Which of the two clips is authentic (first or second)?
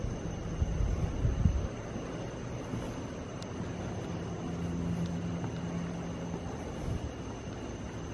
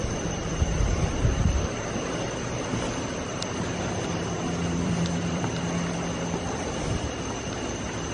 first